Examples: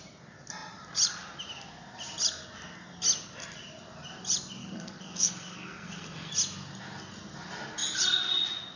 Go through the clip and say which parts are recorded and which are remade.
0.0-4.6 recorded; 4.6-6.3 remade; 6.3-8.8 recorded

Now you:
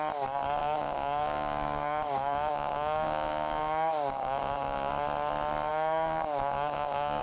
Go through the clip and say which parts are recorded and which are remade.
0.0-0.6 recorded; 0.6-4.9 remade; 4.9-5.7 recorded; 5.7-7.2 remade

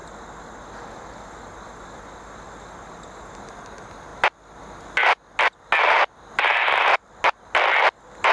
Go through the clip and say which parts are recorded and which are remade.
0.0-8.3 recorded

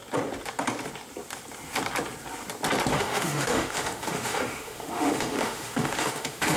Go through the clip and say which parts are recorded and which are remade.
0.0-2.9 recorded; 2.9-6.6 remade

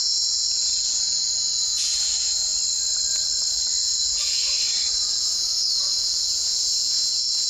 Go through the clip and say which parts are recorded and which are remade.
0.0-2.5 remade; 2.5-3.8 recorded; 3.8-4.4 remade; 4.4-5.0 recorded; 5.0-7.5 remade